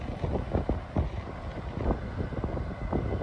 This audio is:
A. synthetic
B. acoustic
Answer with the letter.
B